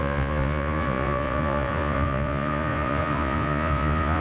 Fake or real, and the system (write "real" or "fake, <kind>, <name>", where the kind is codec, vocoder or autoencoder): fake, vocoder, Vocos